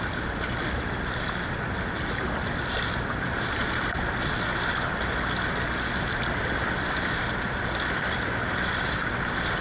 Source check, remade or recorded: recorded